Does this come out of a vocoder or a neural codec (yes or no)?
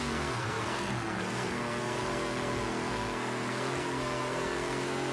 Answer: yes